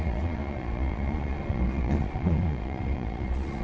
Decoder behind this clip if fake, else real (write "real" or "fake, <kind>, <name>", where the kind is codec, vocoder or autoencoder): fake, vocoder, Vocos